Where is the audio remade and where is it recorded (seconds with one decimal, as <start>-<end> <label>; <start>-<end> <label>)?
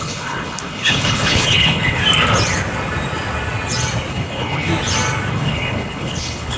0.0-2.0 remade; 2.0-4.1 recorded; 4.1-4.7 remade; 4.7-5.3 recorded; 5.3-6.6 remade